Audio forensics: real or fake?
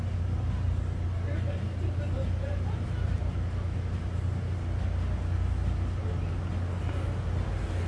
real